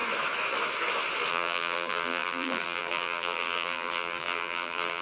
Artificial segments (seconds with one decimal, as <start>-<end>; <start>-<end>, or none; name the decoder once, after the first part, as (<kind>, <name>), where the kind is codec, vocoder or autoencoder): 1.3-5.0 (vocoder, BigVGAN v2)